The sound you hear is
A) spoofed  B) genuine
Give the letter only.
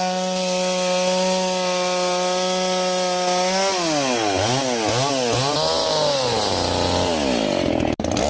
B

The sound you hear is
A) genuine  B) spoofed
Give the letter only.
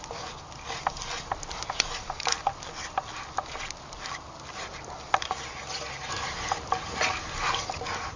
A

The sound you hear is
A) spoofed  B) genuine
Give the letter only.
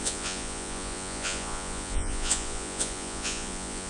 A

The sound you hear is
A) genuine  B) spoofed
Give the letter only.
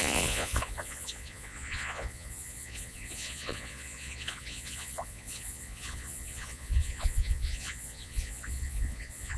B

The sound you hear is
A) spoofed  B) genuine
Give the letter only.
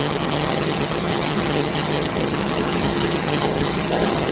A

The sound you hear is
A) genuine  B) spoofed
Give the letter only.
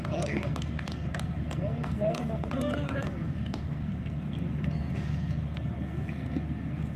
B